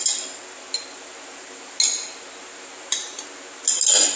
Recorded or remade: recorded